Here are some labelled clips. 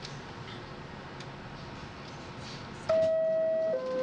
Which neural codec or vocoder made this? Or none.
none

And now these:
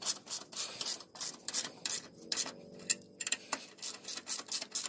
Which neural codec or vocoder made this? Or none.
none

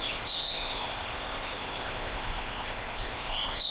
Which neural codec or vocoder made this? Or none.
codec, ZipCodec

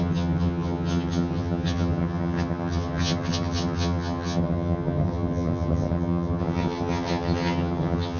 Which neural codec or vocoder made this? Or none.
vocoder, HiFi-GAN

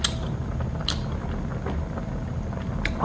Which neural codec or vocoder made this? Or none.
none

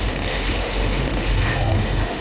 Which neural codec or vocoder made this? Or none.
autoencoder, DAC-VAE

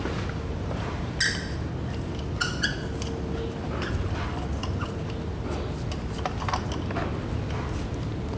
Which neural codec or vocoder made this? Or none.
none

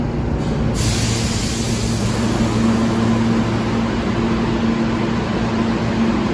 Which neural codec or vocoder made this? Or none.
none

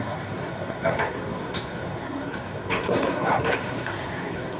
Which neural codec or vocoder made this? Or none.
codec, SNAC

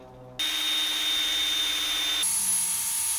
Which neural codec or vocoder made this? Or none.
none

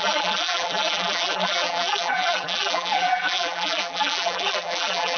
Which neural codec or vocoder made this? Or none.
vocoder, BigVGAN v2